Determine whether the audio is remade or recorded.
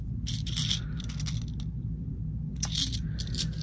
recorded